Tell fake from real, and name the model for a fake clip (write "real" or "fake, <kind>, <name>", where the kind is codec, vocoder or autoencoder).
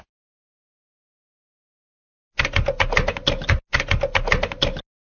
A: real